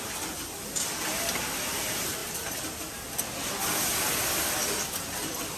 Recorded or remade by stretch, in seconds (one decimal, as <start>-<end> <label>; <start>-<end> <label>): 0.0-5.6 recorded